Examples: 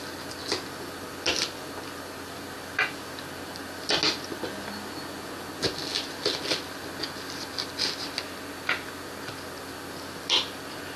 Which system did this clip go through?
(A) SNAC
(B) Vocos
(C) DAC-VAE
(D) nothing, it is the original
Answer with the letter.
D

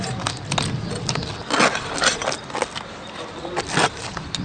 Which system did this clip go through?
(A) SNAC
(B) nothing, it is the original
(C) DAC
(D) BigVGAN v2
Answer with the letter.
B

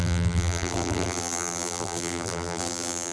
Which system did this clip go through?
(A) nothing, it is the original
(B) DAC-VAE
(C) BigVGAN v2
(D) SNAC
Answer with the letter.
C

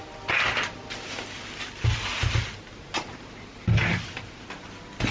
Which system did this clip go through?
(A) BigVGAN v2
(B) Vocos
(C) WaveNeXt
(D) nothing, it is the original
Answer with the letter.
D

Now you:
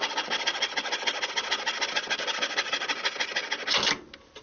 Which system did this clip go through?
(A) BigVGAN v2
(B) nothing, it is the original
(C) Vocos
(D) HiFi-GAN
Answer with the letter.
B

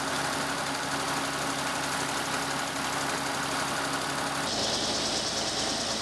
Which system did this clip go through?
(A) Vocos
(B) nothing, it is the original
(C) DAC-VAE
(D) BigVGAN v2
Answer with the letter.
B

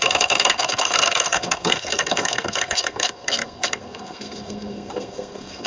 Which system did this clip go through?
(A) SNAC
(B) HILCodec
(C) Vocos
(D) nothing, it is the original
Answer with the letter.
A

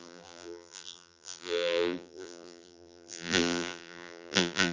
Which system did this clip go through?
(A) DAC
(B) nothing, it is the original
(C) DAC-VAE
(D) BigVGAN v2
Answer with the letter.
D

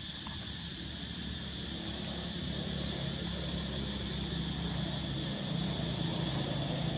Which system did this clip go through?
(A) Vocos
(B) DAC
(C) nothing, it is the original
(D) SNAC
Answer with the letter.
C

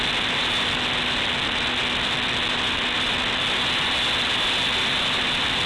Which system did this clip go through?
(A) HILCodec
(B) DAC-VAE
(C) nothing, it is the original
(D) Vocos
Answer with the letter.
C